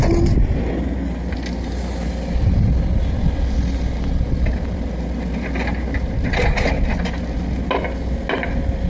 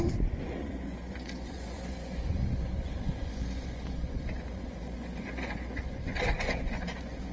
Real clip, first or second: first